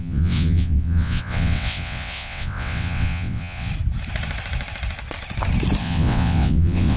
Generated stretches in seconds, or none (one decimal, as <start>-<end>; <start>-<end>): 0.0-3.7; 5.8-7.0

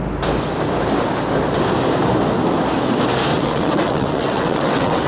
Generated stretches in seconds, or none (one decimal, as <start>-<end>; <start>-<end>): 3.3-5.1

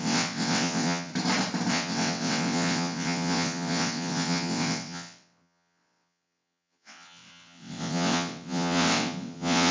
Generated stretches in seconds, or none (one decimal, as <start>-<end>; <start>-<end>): 0.0-1.1; 1.7-9.7

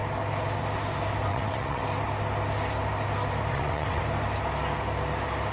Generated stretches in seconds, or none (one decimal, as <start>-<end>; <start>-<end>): 1.3-1.8; 3.5-4.0

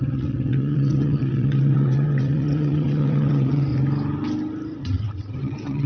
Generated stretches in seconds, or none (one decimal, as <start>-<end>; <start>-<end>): 0.0-3.7; 4.8-5.9

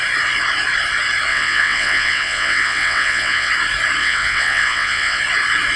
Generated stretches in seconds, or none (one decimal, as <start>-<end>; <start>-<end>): 1.3-3.5; 4.0-5.2

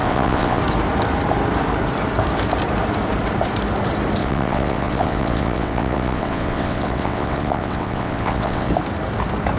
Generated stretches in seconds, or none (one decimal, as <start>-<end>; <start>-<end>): 0.0-0.6; 4.2-8.7

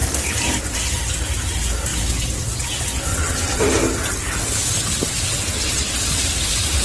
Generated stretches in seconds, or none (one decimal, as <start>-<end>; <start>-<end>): 3.1-3.6; 5.3-5.9